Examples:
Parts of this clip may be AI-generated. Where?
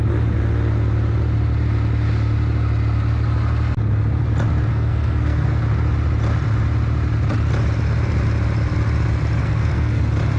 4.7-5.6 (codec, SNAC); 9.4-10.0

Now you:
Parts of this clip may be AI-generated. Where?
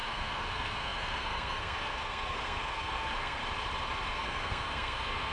0.0-3.4 (codec, SNAC); 4.1-5.3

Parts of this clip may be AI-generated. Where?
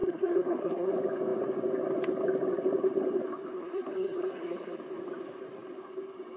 0.0-0.9 (codec, SNAC); 3.5-4.8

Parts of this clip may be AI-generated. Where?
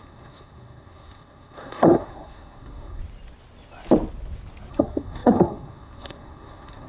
0.0-3.0 (codec, SNAC); 4.7-6.9